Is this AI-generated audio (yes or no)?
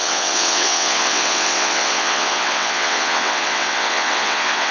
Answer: yes